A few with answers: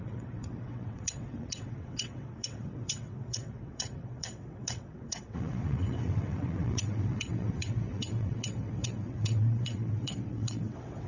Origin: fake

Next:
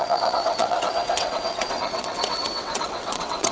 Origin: fake